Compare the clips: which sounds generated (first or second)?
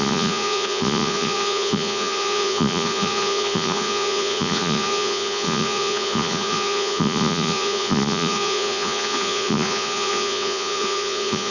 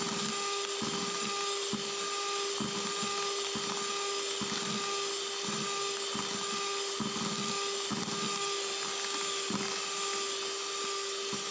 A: first